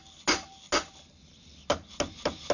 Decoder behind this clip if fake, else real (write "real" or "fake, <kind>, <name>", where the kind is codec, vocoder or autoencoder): real